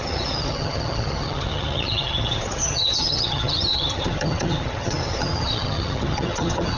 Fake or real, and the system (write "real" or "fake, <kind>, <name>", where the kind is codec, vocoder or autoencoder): fake, vocoder, HiFi-GAN